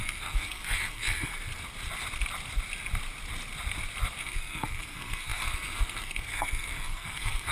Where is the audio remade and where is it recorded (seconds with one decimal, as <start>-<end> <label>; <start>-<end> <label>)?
0.0-1.3 remade; 1.3-4.2 recorded; 4.2-7.5 remade